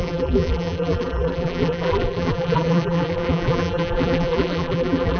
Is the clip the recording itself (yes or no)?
no